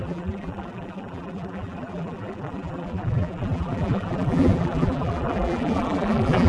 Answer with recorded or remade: remade